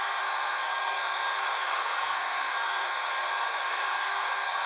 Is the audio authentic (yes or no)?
no